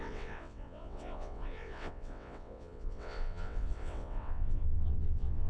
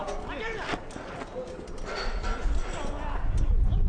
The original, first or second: second